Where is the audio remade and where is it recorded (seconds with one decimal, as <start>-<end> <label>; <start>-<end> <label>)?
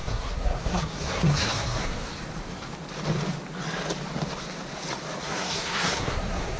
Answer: 0.0-2.1 remade; 2.1-5.2 recorded; 5.2-6.6 remade